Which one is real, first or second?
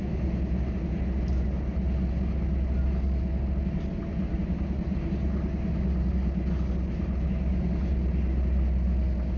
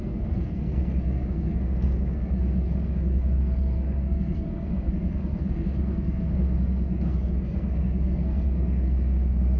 first